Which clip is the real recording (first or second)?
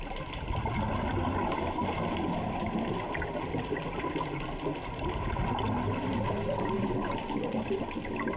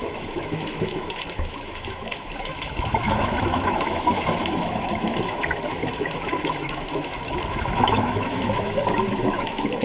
first